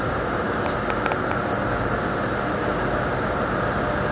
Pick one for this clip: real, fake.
real